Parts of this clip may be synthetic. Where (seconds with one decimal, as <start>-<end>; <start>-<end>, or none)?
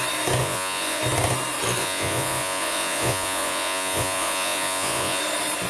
0.4-1.0; 1.8-5.2